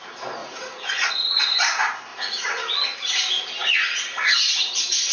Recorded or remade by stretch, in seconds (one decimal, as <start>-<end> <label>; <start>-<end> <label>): 0.0-0.4 recorded; 0.4-1.1 remade; 1.1-2.1 recorded; 2.1-2.7 remade; 2.7-5.1 recorded